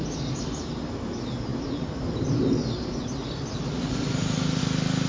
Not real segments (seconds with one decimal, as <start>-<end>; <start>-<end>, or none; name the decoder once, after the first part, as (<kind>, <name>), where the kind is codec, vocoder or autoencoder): none